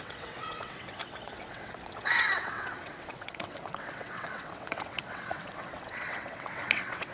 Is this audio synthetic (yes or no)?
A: yes